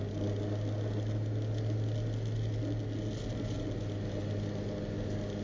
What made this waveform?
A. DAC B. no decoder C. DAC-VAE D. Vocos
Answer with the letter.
B